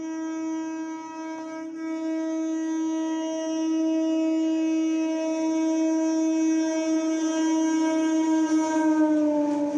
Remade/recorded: recorded